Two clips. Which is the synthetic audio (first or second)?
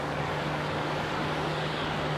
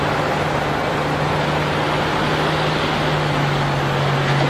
first